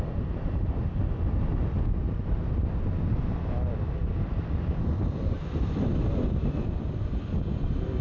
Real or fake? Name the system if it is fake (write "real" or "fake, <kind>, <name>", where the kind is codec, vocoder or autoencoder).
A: fake, vocoder, BigVGAN v2